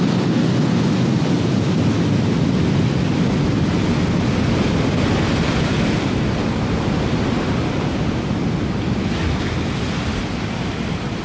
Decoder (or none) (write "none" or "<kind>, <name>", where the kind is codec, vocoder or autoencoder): none